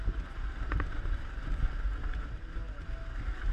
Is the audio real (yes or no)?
yes